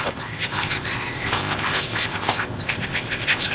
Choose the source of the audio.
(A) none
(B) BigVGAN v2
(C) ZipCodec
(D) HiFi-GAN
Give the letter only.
C